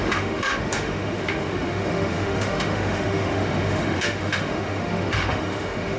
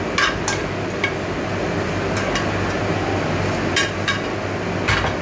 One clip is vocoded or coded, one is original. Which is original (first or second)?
second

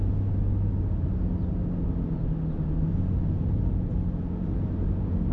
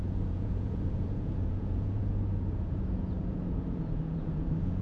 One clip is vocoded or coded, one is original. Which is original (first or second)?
first